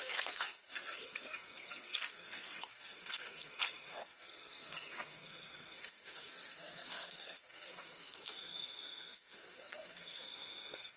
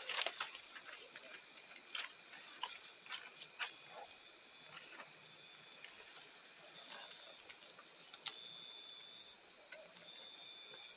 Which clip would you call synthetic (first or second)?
first